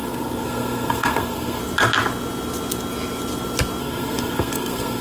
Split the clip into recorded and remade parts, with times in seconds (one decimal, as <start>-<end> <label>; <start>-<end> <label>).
0.0-1.6 remade; 1.6-3.8 recorded; 3.8-5.0 remade